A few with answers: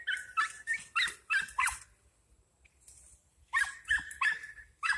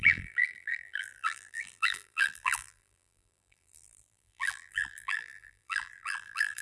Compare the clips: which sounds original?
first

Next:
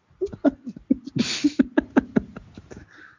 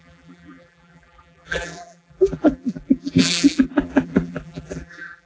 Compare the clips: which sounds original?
first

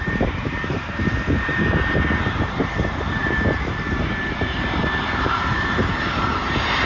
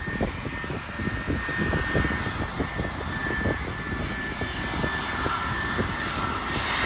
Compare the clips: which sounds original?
second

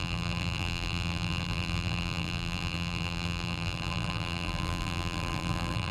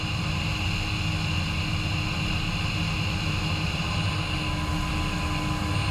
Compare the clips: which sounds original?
second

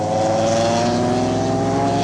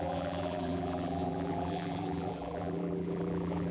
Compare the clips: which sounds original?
first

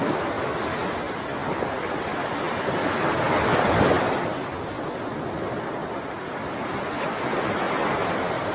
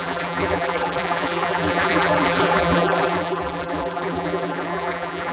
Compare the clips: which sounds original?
first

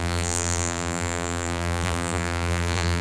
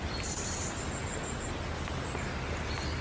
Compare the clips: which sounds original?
second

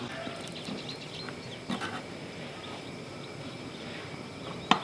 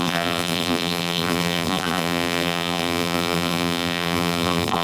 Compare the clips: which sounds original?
first